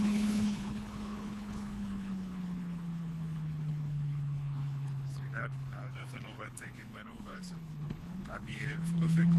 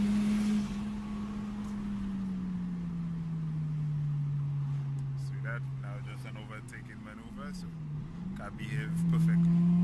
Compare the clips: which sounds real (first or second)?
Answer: second